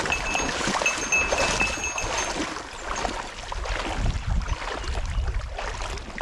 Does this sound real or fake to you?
real